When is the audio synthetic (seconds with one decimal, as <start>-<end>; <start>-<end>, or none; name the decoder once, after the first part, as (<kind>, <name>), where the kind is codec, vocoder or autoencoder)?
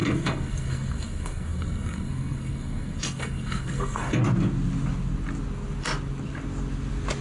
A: 0.0-4.2 (codec, SNAC)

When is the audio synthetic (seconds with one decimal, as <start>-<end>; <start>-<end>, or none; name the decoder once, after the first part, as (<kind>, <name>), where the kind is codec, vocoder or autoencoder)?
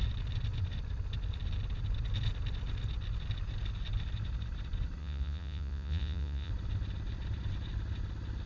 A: 5.0-6.5 (vocoder, Vocos)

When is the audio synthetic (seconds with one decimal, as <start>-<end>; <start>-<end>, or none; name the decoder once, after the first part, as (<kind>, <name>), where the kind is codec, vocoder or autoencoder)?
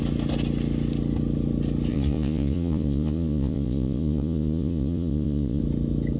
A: 1.9-5.6 (vocoder, Vocos)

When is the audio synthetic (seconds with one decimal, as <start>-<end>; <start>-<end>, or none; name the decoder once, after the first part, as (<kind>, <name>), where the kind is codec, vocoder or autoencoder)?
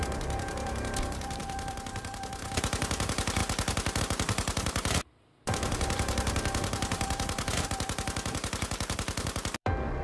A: 0.0-3.4 (vocoder, BigVGAN v2); 4.0-10.0